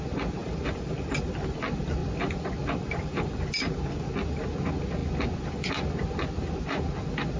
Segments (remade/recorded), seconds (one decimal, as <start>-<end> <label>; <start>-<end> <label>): 0.0-0.4 recorded; 0.4-1.6 remade; 1.6-2.0 recorded; 2.0-3.5 remade; 3.5-7.4 recorded